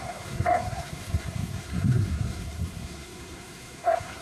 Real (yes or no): no